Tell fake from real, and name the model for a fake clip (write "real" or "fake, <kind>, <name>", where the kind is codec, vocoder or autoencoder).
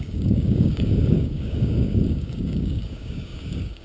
fake, codec, DAC